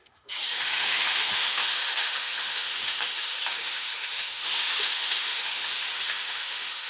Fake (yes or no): yes